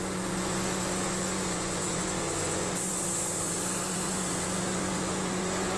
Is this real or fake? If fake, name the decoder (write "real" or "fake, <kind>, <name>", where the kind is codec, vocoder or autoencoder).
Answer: fake, vocoder, Vocos